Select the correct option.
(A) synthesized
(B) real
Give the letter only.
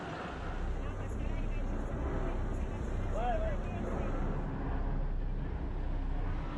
B